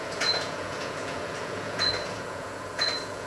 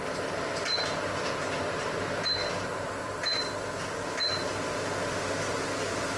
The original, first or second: second